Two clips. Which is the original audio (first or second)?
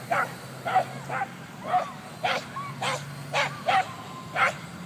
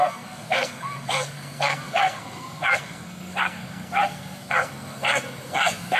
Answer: first